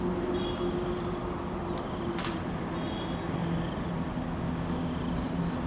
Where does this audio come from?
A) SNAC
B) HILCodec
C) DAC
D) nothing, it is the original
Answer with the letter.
D